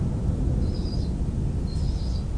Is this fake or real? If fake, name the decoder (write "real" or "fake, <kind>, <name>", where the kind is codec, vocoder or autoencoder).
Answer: fake, vocoder, BigVGAN v2